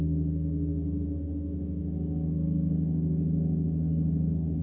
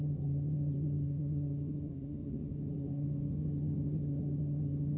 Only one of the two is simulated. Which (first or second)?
second